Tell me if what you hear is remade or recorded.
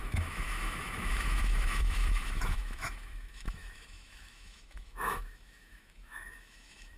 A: remade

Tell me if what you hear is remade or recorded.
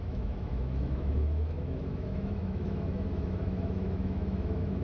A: remade